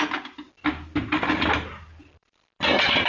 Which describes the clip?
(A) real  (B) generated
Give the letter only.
A